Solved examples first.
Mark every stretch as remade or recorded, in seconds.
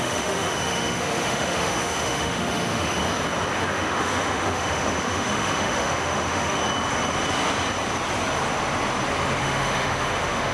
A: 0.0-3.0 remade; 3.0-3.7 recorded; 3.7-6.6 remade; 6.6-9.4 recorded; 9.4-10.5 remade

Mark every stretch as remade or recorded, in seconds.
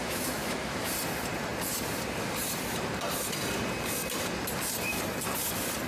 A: 0.0-0.9 remade; 0.9-5.9 recorded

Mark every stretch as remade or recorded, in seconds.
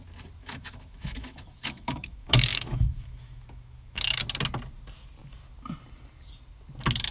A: 0.0-0.4 recorded; 0.4-4.2 remade; 4.2-7.1 recorded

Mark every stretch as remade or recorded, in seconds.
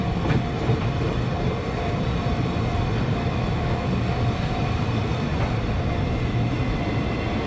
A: 0.0-3.1 recorded; 3.1-3.9 remade; 3.9-7.5 recorded